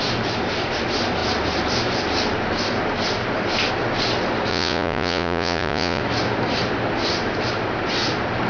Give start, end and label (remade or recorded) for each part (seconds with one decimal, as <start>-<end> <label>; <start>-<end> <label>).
0.0-4.5 recorded; 4.5-6.0 remade; 6.0-8.5 recorded